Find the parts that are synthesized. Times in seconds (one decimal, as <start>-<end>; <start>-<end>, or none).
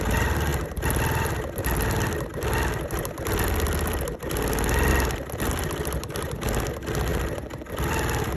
none